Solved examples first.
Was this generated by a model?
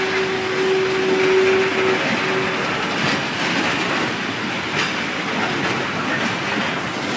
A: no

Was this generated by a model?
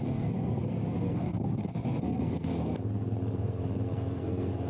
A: yes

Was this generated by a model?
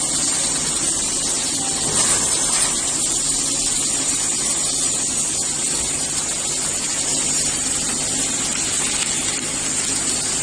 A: no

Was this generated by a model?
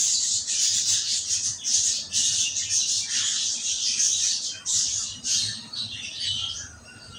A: no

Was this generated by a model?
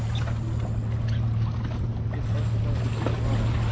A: no